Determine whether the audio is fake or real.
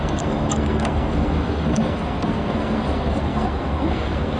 fake